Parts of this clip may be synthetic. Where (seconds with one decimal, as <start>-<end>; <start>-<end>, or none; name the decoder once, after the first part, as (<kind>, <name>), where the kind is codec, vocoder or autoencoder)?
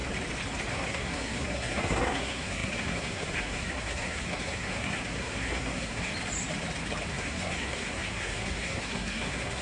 0.7-6.1 (codec, SNAC); 7.1-9.6